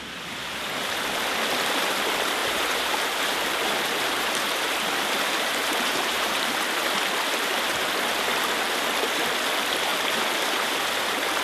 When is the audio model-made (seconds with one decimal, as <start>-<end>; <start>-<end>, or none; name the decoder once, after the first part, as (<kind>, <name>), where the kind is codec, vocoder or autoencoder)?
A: 0.4-1.0 (vocoder, BigVGAN v2); 2.4-6.6